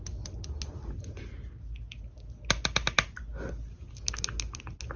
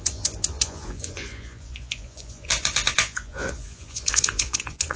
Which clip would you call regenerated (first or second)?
second